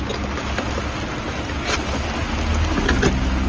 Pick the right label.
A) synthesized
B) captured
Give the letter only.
B